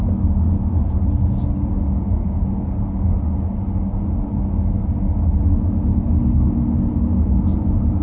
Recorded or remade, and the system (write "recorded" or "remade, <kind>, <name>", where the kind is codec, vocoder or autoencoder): recorded